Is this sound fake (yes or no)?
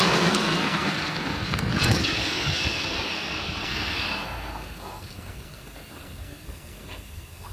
yes